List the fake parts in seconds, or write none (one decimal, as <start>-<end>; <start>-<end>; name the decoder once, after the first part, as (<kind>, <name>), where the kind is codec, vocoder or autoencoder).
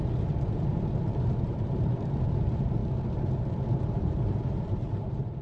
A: 0.0-2.8 (vocoder, BigVGAN v2); 3.7-5.4